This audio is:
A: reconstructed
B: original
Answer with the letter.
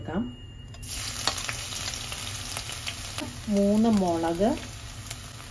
B